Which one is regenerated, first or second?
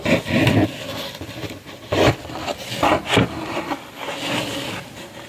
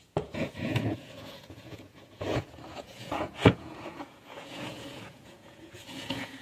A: second